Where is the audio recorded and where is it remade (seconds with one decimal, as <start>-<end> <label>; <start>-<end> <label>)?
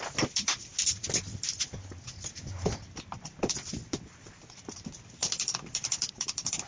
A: 0.0-0.7 remade; 0.7-3.1 recorded; 3.1-6.7 remade